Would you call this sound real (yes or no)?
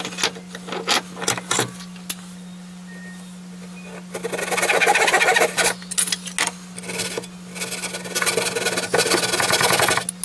yes